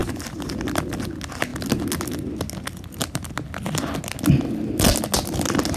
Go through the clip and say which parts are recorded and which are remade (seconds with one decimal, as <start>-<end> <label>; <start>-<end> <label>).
0.0-5.8 recorded

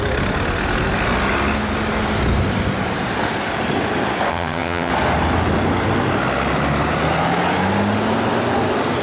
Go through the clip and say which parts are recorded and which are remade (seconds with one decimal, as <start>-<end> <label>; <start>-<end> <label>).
0.0-4.3 recorded; 4.3-4.9 remade; 4.9-9.0 recorded

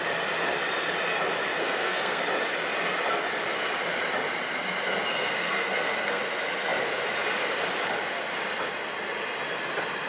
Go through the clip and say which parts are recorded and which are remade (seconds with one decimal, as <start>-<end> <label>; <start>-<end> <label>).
0.0-1.6 recorded; 1.6-2.2 remade; 2.2-5.1 recorded; 5.1-6.2 remade; 6.2-10.1 recorded

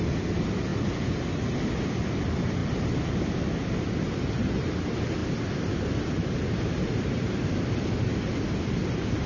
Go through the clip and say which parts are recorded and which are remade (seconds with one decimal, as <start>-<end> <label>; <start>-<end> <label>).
0.0-0.7 recorded; 0.7-1.2 remade; 1.2-9.3 recorded

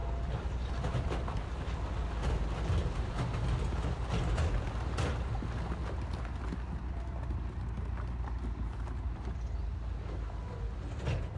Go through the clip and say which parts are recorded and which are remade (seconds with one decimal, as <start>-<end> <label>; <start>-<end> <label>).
0.0-1.8 remade; 1.8-11.4 recorded

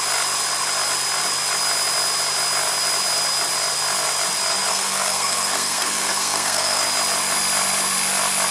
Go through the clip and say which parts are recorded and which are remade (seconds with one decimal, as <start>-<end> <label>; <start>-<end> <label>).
0.0-4.7 recorded; 4.7-6.8 remade; 6.8-8.5 recorded

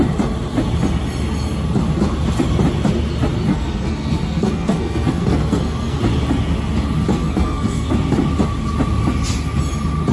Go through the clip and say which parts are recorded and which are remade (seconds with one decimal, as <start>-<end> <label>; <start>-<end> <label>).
0.0-3.5 recorded; 3.5-6.0 remade; 6.0-7.1 recorded; 7.1-7.9 remade; 7.9-10.1 recorded

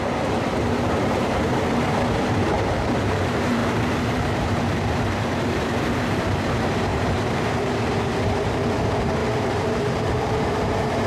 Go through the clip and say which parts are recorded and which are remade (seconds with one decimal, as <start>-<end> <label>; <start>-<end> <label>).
0.0-11.1 remade